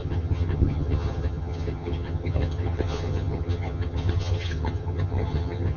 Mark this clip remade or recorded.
remade